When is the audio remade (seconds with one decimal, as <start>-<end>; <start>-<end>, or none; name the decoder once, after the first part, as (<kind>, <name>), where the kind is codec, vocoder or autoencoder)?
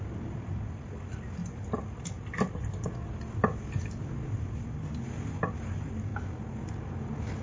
none